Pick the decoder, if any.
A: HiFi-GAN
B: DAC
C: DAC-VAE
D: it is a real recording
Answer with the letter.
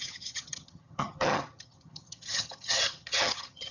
A